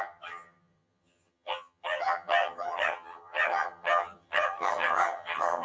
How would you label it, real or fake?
fake